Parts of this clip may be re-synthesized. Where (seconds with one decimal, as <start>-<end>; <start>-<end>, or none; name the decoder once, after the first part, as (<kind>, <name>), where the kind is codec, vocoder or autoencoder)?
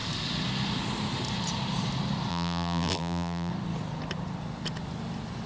2.3-3.5 (vocoder, BigVGAN v2)